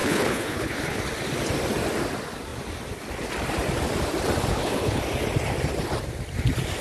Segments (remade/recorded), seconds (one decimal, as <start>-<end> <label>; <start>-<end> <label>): 0.0-1.0 remade; 1.0-4.5 recorded; 4.5-5.0 remade; 5.0-6.8 recorded